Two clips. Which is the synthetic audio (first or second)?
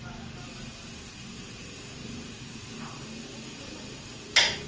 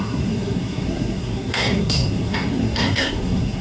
second